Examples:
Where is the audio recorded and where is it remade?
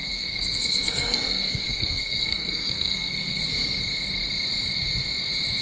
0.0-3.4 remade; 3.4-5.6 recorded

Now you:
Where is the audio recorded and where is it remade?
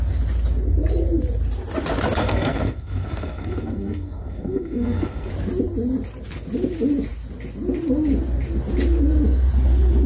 0.0-2.2 recorded; 2.2-5.3 remade; 5.3-10.1 recorded